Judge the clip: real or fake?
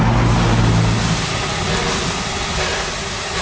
real